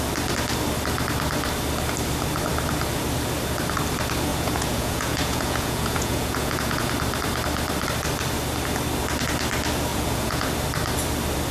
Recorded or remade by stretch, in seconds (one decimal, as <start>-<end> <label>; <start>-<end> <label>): 0.0-4.3 recorded; 4.3-6.9 remade; 6.9-9.9 recorded; 9.9-10.5 remade; 10.5-11.5 recorded